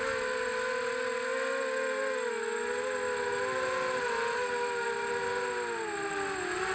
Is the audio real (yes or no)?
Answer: yes